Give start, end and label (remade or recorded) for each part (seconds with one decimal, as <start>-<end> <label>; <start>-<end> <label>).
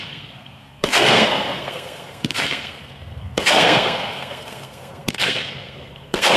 0.0-6.4 remade